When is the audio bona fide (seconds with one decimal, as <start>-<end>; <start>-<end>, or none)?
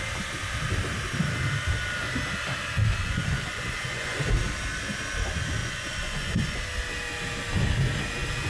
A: 0.0-3.0; 4.2-5.6; 6.6-8.5